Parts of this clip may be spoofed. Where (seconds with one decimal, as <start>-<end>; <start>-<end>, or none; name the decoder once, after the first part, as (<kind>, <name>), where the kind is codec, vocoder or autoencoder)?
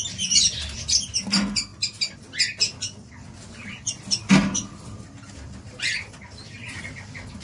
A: none